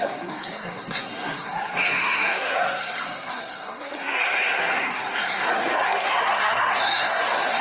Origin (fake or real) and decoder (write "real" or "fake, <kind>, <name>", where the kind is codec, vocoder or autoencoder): fake, codec, SNAC